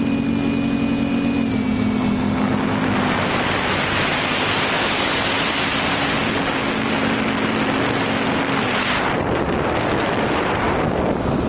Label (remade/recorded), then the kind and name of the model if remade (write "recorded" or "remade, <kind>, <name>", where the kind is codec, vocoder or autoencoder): recorded